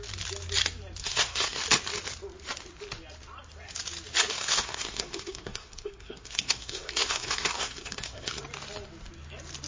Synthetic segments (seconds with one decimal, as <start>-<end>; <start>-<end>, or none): 1.0-1.6; 4.3-8.4